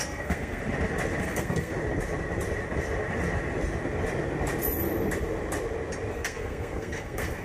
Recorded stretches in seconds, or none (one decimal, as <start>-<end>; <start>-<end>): 0.6-1.2; 1.7-6.1